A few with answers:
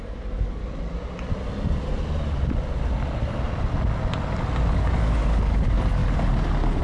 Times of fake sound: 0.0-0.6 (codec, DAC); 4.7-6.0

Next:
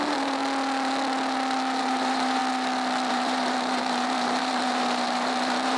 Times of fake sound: 0.0-0.4 (vocoder, BigVGAN v2); 1.8-2.4; 3.1-5.8

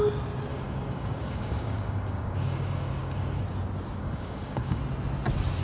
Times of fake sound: 0.5-3.4 (codec, DAC); 4.0-4.8

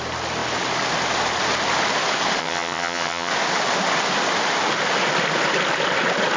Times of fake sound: 2.4-3.3 (vocoder, HiFi-GAN)

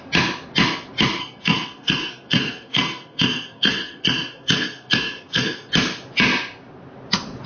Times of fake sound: 1.2-5.7 (codec, SNAC)

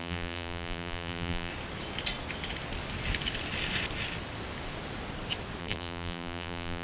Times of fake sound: 0.0-1.5 (vocoder, BigVGAN v2); 5.6-6.8

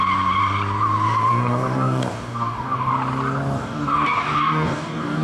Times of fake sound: 1.3-2.9 (codec, DAC); 3.6-5.2

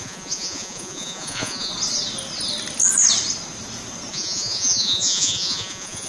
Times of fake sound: 0.0-1.7 (vocoder, Vocos); 4.1-6.1